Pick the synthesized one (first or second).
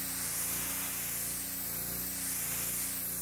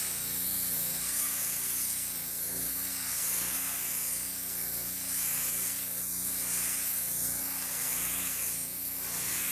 second